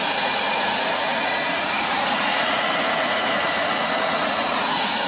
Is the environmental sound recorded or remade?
remade